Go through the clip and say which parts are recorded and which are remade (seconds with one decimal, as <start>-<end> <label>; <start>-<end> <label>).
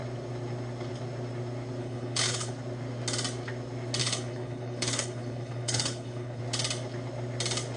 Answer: 0.0-1.8 recorded; 1.8-2.5 remade; 2.5-4.0 recorded; 4.0-6.4 remade; 6.4-7.8 recorded